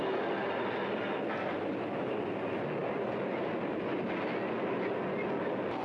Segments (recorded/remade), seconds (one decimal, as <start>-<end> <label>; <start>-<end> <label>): 0.0-5.8 recorded